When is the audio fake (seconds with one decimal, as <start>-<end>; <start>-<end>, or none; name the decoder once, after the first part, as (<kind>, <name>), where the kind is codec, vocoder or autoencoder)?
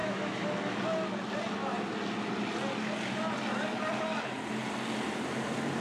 0.0-0.8 (autoencoder, DAC-VAE)